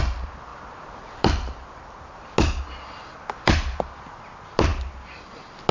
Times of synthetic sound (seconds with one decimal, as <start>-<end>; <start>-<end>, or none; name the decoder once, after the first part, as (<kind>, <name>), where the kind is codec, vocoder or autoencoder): none